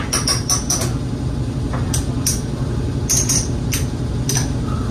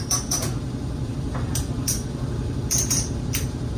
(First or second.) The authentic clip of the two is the first